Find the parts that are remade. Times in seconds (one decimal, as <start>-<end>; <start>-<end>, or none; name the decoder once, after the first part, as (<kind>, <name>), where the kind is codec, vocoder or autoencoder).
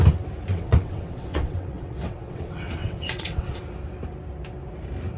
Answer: 0.5-3.6 (vocoder, WaveNeXt)